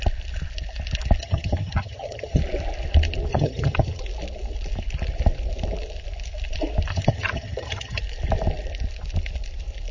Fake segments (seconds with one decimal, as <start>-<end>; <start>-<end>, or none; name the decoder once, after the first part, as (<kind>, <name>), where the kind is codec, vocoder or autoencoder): 1.2-2.4 (vocoder, HiFi-GAN); 3.3-4.0; 6.9-8.0